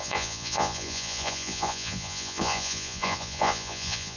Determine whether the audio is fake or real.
fake